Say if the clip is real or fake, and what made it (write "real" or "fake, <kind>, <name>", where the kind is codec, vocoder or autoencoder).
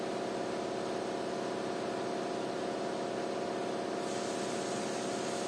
real